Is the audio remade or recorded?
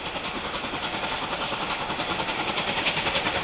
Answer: recorded